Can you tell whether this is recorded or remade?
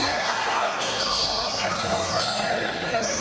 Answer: remade